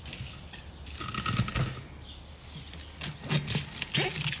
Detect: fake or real real